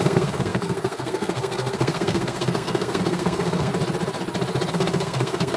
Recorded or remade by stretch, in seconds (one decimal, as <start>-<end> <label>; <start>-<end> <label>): 0.0-3.7 remade; 3.7-4.7 recorded; 4.7-5.6 remade